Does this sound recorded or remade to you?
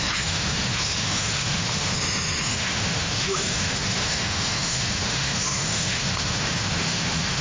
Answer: remade